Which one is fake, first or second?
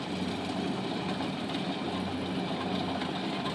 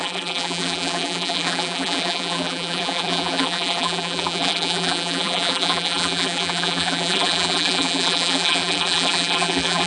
second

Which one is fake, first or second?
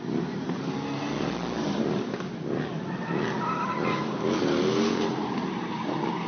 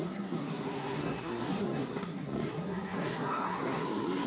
second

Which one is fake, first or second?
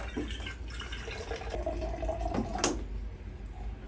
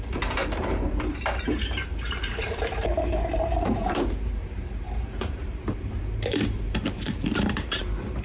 second